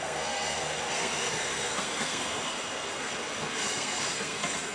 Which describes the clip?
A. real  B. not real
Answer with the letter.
B